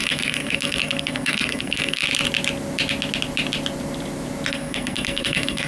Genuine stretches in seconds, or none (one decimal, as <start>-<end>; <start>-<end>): 2.0-4.5